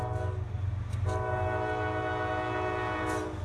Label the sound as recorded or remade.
recorded